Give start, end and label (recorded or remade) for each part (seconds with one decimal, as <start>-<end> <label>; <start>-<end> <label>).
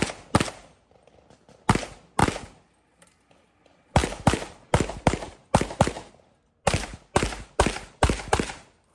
0.0-8.9 recorded